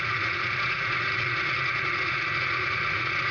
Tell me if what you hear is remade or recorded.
remade